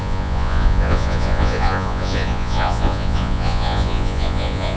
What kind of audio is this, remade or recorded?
remade